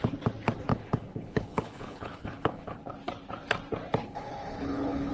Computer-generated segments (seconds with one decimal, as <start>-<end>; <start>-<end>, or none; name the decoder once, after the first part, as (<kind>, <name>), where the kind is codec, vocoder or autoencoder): 0.7-2.8 (codec, HILCodec); 4.0-5.1